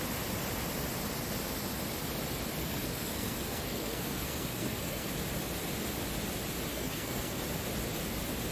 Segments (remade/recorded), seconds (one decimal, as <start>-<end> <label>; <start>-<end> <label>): 0.0-2.6 recorded; 2.6-5.1 remade; 5.1-6.7 recorded; 6.7-7.4 remade; 7.4-8.5 recorded